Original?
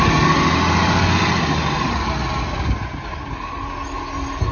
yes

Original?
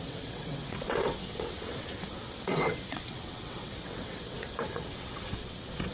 no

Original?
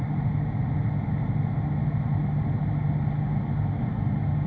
yes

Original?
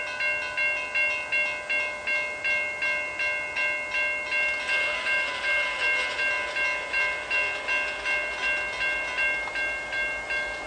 yes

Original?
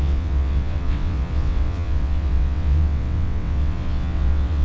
no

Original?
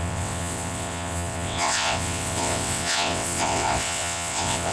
no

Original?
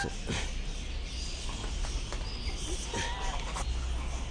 yes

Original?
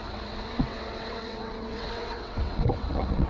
no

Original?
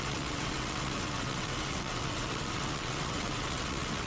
no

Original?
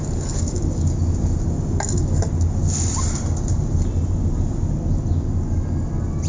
yes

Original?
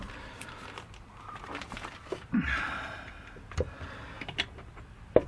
yes